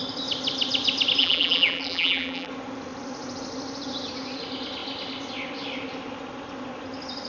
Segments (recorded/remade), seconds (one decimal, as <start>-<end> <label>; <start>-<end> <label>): 0.0-1.2 recorded; 1.2-2.5 remade; 2.5-7.3 recorded